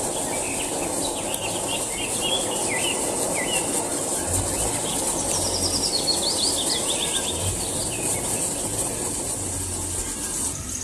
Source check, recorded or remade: recorded